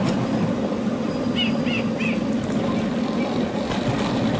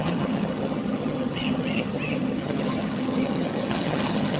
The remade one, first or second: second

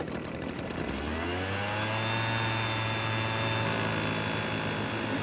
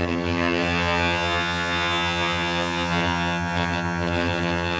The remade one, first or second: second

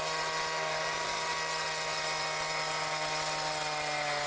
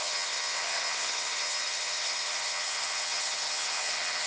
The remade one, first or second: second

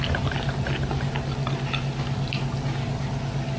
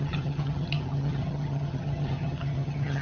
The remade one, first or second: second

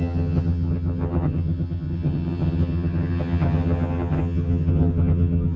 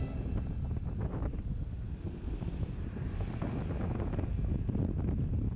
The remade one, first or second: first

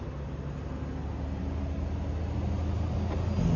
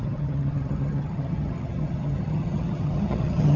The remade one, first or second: second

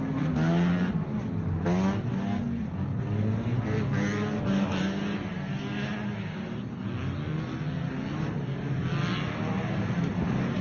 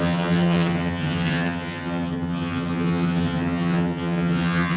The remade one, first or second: second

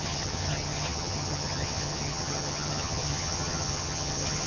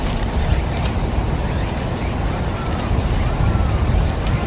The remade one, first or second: first